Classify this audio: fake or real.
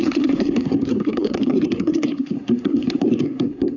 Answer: fake